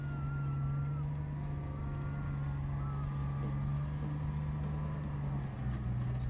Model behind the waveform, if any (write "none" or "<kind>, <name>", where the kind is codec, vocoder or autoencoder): none